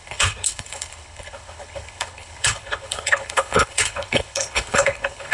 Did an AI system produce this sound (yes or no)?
yes